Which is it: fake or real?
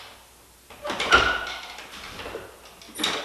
real